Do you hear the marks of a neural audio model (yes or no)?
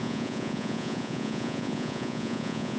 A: yes